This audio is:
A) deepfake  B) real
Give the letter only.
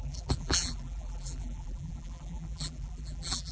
A